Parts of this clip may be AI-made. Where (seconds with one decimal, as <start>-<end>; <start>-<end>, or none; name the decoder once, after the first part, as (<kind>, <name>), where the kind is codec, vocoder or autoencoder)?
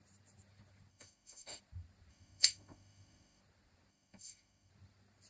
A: 0.9-1.6 (autoencoder, DAC-VAE); 2.1-3.4; 3.9-4.7